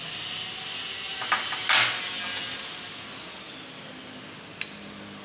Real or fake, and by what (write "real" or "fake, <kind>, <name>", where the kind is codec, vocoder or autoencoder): real